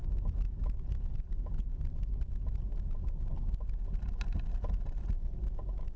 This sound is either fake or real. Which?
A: real